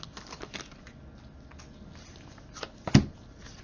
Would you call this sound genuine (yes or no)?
yes